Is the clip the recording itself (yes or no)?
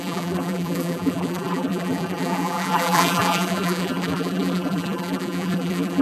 no